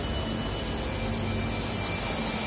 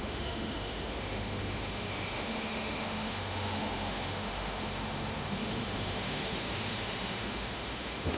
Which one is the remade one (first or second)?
second